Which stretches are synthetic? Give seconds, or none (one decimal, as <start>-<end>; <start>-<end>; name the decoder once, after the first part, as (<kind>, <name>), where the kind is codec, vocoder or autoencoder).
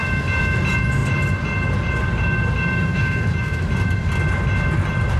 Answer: 2.9-3.7 (autoencoder, DAC-VAE)